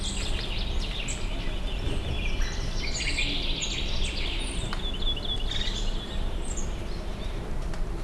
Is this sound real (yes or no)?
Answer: yes